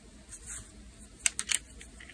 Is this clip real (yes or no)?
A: yes